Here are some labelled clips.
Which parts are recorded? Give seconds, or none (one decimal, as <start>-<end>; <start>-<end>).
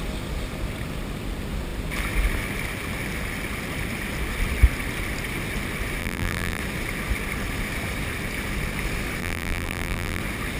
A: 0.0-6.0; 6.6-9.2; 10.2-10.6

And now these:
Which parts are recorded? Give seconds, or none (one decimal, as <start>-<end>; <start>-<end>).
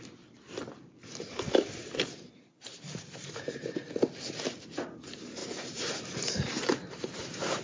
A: 0.0-1.1; 3.8-5.4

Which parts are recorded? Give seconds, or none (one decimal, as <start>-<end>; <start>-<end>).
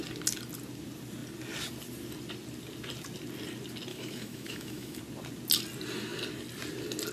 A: 0.0-3.9; 5.0-7.1